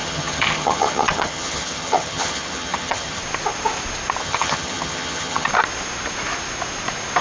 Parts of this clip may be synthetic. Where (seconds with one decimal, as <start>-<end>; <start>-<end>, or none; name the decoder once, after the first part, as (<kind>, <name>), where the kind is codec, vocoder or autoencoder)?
0.0-3.2 (vocoder, HiFi-GAN); 4.2-5.5